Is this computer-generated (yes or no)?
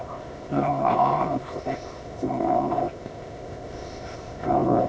yes